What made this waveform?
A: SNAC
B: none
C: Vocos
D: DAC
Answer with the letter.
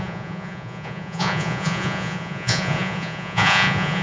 C